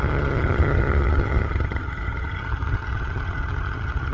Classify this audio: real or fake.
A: fake